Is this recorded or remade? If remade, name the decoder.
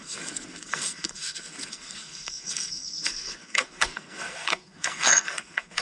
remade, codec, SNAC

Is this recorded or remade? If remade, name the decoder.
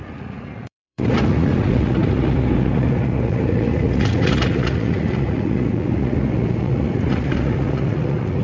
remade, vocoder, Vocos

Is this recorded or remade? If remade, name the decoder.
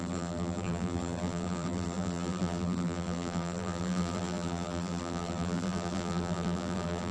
remade, vocoder, BigVGAN v2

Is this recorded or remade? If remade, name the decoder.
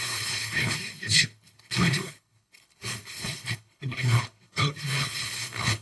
remade, codec, HILCodec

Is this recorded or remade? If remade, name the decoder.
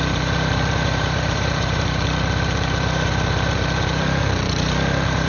remade, vocoder, BigVGAN v2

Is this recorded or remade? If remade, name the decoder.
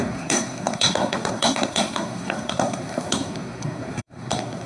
remade, codec, SNAC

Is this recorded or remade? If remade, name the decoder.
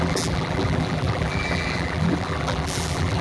remade, vocoder, BigVGAN v2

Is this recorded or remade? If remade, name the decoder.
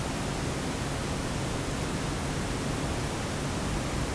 recorded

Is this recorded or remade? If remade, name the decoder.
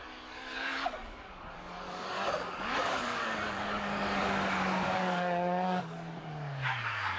remade, codec, DAC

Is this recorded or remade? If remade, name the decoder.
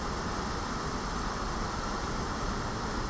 recorded